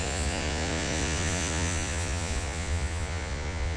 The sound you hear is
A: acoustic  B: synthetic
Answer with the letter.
B